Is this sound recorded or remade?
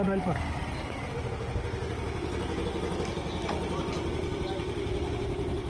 recorded